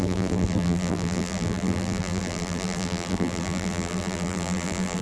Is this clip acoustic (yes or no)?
no